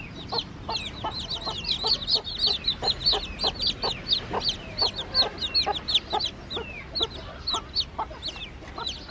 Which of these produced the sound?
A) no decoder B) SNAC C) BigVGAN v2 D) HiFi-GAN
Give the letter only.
A